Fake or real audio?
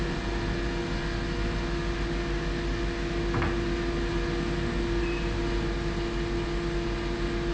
real